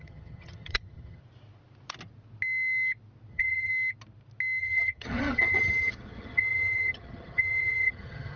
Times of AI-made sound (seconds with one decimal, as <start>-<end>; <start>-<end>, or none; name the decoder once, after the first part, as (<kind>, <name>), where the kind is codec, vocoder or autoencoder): 0.0-1.2 (vocoder, HiFi-GAN); 3.3-3.7; 4.6-8.4